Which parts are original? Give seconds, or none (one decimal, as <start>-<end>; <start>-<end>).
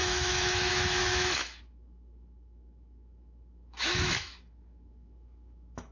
none